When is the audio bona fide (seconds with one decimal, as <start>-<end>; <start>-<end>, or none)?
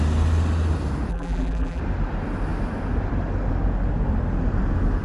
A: 0.0-1.1; 1.8-5.0